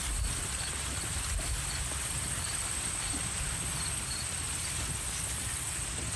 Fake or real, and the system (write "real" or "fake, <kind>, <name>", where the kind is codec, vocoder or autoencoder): real